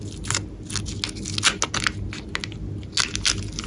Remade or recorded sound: recorded